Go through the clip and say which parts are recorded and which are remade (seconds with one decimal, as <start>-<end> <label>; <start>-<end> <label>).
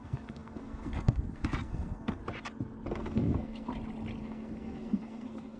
0.0-2.2 remade; 2.2-2.9 recorded; 2.9-3.7 remade; 3.7-4.2 recorded; 4.2-5.6 remade